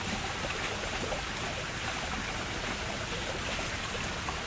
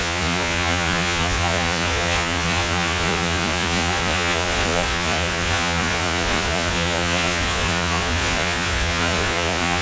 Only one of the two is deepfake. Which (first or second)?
second